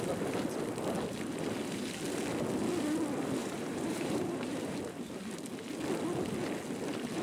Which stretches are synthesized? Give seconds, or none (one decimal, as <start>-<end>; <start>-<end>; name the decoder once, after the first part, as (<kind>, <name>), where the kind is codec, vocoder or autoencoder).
3.4-4.8 (vocoder, BigVGAN v2)